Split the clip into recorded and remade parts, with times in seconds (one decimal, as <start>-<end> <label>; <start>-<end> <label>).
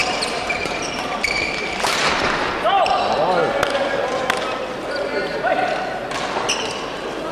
0.0-2.5 remade; 2.5-7.3 recorded